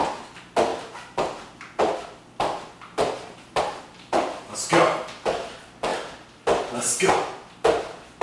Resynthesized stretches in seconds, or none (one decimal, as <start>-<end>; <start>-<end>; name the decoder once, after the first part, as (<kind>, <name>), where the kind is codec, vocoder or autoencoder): none